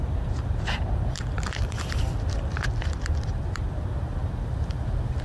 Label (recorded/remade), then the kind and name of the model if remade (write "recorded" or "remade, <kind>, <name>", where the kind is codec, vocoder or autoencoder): remade, vocoder, BigVGAN v2